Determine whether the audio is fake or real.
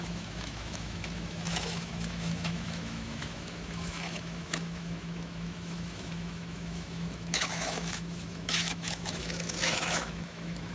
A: fake